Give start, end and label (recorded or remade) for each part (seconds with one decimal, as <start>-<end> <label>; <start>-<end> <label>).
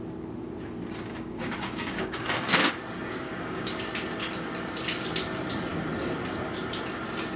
0.0-1.1 recorded; 1.1-2.7 remade; 2.7-3.2 recorded; 3.2-3.7 remade; 3.7-7.4 recorded